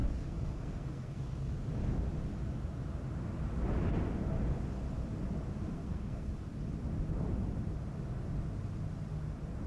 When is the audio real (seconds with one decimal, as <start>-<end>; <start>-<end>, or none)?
1.5-5.7; 6.3-9.7